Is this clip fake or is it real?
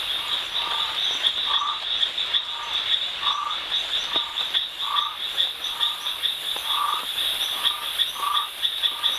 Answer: real